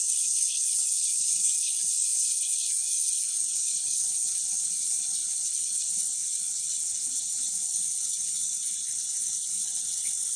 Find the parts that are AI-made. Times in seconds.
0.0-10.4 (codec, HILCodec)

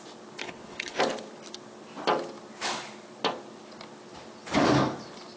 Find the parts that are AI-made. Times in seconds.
0.4-1.0 (codec, HILCodec)

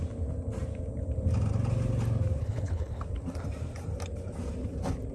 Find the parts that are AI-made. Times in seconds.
2.4-3.0 (codec, HILCodec)

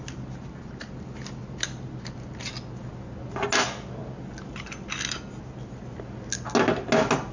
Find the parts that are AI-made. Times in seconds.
none